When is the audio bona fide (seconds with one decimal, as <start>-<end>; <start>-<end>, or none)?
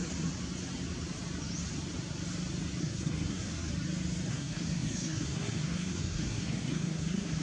0.0-2.8; 3.7-4.3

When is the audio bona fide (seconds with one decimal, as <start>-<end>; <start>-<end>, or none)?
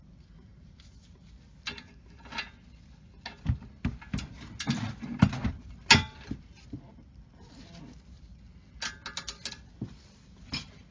0.0-10.9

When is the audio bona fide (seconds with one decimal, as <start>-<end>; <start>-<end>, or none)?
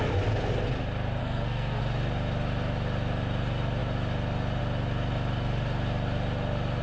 0.0-1.2; 1.8-6.8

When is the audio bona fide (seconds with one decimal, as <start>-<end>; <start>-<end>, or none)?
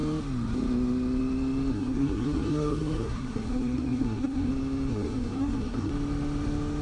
0.0-1.7; 4.5-4.9; 5.9-6.8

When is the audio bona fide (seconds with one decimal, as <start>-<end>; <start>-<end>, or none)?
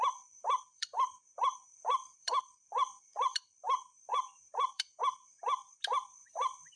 0.0-0.4; 1.1-1.7; 5.0-6.2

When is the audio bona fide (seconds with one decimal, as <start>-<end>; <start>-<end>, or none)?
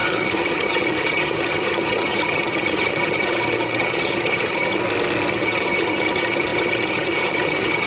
4.8-5.3